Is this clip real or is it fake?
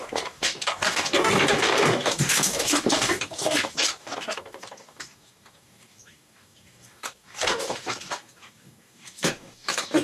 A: fake